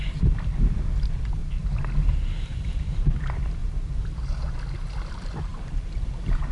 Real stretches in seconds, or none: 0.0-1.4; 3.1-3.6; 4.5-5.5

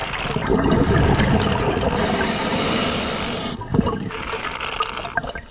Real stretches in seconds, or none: 0.0-3.7; 4.4-5.5

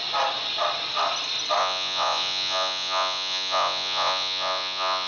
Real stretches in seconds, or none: 0.0-1.6

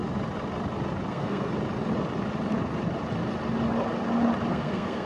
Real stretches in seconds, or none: 0.0-1.1; 1.5-4.5

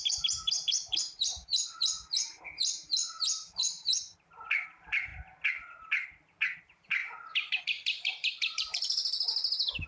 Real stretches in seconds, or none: 1.5-2.2; 3.9-4.6; 5.1-6.6